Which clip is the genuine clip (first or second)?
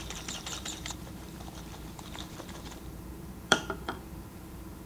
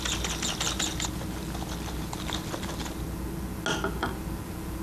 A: second